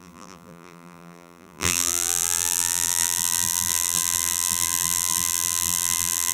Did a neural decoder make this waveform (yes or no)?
yes